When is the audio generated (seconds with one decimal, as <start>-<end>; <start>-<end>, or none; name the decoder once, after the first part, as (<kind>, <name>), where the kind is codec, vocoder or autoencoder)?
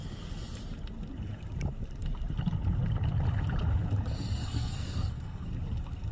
4.4-5.5 (codec, SNAC)